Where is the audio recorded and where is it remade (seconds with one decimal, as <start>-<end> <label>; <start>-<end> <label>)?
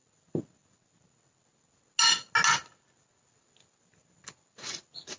0.0-5.2 recorded